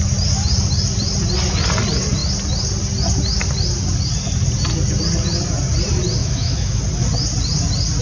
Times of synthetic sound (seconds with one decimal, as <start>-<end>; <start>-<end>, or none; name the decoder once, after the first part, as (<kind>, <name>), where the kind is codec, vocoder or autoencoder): 6.2-6.8 (autoencoder, DAC-VAE)